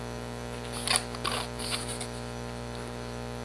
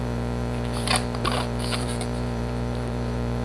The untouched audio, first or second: first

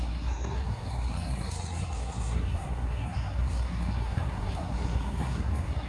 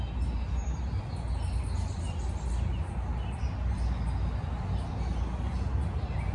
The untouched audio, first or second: second